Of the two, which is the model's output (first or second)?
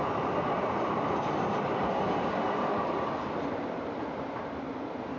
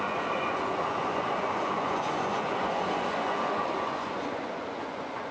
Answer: second